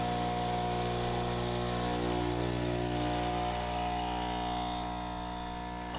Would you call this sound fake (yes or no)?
no